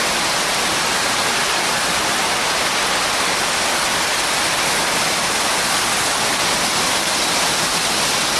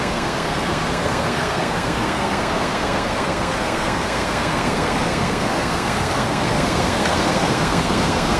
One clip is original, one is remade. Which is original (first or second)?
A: first